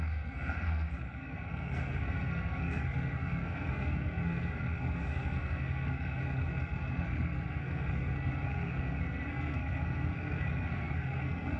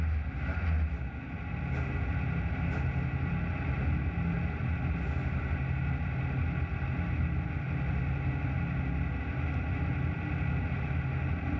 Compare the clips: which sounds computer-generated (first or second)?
first